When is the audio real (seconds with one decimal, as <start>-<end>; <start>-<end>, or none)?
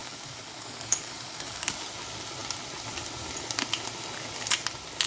1.7-5.1